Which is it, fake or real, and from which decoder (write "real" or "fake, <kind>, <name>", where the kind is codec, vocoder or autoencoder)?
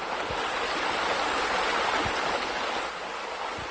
real